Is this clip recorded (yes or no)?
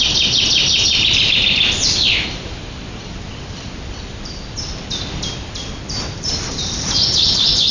no